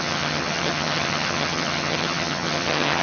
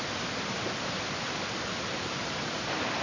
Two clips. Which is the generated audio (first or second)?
first